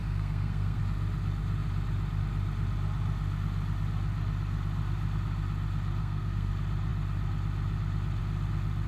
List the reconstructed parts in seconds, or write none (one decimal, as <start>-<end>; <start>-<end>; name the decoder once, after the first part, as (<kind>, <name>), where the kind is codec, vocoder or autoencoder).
0.0-0.8 (codec, SNAC); 6.0-6.5